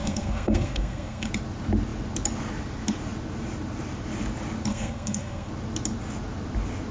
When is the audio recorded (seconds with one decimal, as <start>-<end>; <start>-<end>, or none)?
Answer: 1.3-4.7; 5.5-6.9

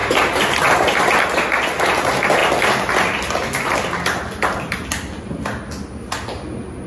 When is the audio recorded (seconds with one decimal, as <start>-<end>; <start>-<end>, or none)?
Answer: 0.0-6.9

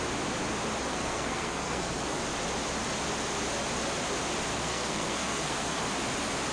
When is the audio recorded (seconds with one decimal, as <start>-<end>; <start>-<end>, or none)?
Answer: 0.0-0.9; 2.2-4.5; 5.8-6.5